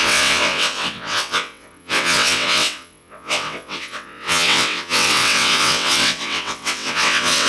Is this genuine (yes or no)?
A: no